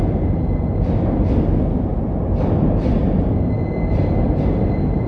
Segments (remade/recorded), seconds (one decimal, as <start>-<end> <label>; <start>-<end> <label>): 0.0-5.1 recorded